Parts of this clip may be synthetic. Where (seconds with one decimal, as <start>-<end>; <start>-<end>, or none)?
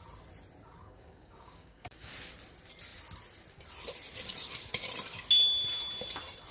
0.8-2.1